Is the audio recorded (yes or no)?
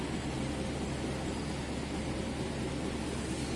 yes